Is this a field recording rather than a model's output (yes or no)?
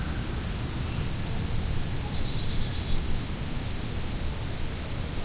yes